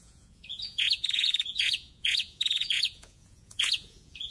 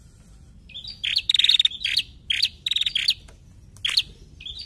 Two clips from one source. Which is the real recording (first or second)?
second